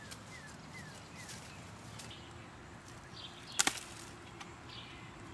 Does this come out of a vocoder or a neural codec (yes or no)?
no